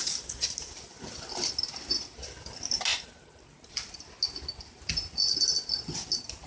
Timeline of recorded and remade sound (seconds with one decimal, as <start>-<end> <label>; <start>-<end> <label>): 0.0-6.5 recorded